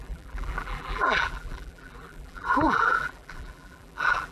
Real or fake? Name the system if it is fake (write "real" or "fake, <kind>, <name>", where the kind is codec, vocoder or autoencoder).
fake, vocoder, BigVGAN v2